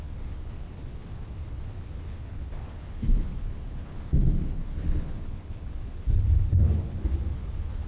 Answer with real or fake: fake